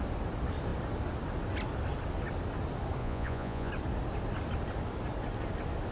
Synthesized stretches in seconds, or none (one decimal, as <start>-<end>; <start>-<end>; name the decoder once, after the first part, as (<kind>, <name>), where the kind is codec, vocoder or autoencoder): 3.0-3.7 (vocoder, Vocos)